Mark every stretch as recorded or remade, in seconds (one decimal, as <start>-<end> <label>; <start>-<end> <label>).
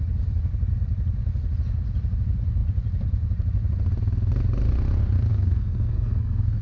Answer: 0.0-5.3 recorded; 5.3-6.6 remade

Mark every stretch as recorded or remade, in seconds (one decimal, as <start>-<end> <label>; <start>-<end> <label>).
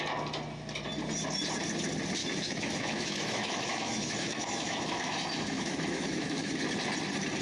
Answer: 0.0-2.2 recorded; 2.2-6.6 remade; 6.6-7.4 recorded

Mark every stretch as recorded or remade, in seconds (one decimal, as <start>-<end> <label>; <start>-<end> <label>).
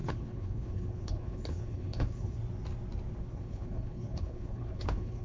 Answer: 0.0-2.4 remade; 2.4-3.2 recorded; 3.2-5.2 remade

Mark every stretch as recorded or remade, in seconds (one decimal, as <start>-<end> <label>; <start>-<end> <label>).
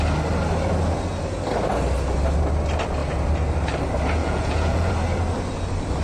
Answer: 0.0-4.2 recorded; 4.2-4.9 remade; 4.9-6.0 recorded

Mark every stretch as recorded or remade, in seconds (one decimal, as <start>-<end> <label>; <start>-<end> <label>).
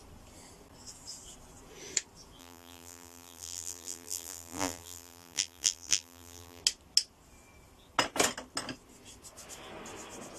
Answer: 0.0-2.4 recorded; 2.4-6.6 remade; 6.6-10.4 recorded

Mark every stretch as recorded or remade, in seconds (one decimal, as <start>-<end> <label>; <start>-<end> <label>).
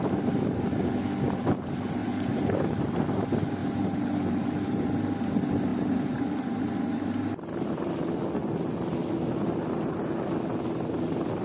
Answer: 0.0-2.0 recorded; 2.0-3.0 remade; 3.0-3.6 recorded; 3.6-4.8 remade; 4.8-5.7 recorded; 5.7-7.9 remade; 7.9-11.4 recorded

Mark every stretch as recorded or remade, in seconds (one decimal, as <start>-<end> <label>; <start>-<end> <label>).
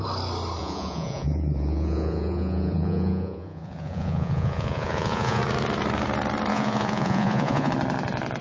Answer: 0.0-0.6 recorded; 0.6-5.4 remade; 5.4-6.5 recorded; 6.5-7.7 remade; 7.7-8.4 recorded